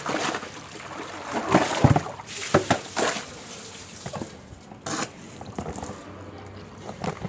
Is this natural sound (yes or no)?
yes